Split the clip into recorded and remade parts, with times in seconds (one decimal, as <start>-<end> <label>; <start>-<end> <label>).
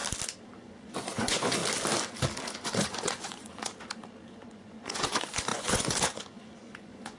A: 0.0-0.6 recorded; 0.6-1.6 remade; 1.6-2.5 recorded; 2.5-3.7 remade; 3.7-4.3 recorded; 4.3-7.2 remade